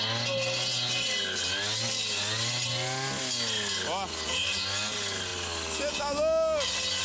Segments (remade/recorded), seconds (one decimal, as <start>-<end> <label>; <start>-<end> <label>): 0.0-7.0 recorded